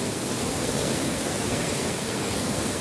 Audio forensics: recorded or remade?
remade